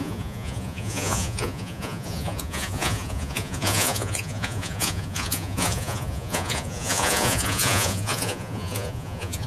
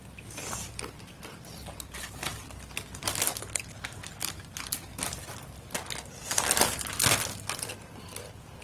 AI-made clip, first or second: first